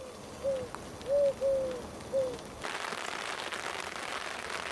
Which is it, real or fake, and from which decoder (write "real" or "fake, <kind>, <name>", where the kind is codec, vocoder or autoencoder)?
real